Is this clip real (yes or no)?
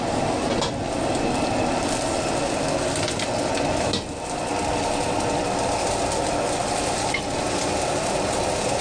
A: yes